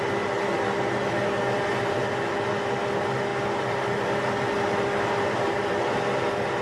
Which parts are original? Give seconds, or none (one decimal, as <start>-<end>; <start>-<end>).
0.0-6.6